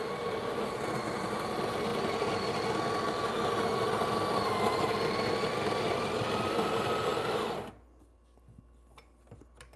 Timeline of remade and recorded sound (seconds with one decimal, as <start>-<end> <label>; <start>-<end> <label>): 0.0-9.8 recorded